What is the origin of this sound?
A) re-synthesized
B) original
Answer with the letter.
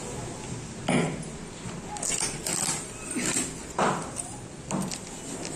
B